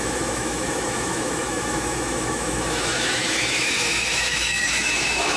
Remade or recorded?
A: remade